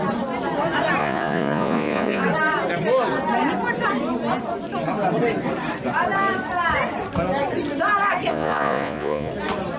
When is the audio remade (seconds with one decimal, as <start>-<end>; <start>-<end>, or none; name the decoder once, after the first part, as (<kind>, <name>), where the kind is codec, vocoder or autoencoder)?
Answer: 1.0-2.2 (vocoder, Vocos); 8.3-9.3